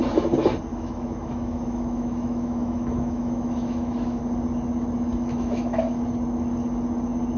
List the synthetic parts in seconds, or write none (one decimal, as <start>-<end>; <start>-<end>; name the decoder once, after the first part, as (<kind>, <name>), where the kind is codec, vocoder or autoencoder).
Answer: 0.7-4.2 (autoencoder, DAC-VAE); 5.1-6.0